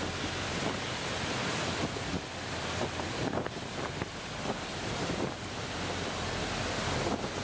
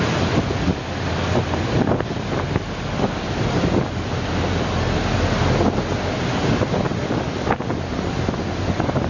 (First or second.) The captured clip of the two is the second